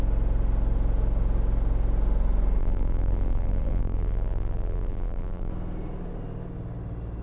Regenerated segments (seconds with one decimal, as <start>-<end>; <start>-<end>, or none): 2.6-5.5